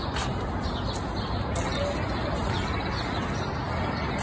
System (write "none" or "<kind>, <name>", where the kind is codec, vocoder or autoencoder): none